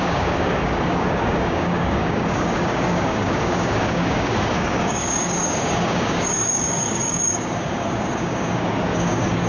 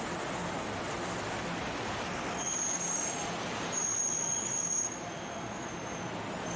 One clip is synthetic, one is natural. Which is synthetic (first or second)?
first